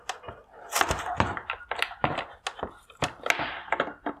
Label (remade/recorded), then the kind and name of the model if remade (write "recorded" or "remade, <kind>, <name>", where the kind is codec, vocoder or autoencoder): recorded